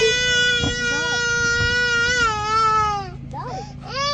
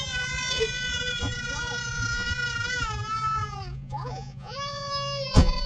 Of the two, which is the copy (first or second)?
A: second